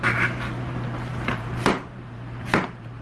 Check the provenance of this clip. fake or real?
fake